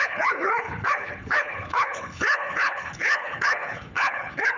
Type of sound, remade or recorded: remade